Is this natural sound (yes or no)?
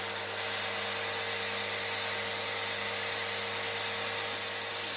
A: yes